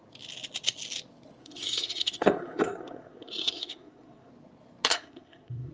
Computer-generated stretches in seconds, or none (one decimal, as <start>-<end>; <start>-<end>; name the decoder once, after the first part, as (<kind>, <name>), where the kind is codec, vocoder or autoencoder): 1.4-4.3 (codec, SNAC); 4.9-5.7

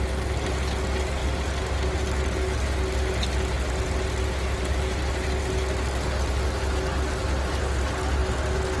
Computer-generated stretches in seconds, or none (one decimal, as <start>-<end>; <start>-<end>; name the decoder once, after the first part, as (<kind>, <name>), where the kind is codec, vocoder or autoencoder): none

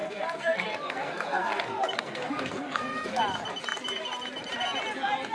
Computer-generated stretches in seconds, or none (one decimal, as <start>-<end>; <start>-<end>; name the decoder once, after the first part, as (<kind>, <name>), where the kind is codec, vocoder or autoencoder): 0.0-3.2 (codec, SNAC)

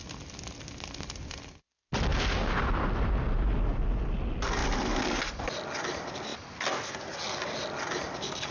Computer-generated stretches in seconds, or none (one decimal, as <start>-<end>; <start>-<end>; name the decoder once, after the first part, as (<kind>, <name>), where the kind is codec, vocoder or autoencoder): none

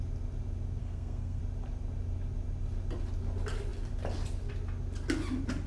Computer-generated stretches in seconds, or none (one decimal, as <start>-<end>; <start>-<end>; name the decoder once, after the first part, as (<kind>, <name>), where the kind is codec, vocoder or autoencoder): 0.8-1.4 (codec, SNAC)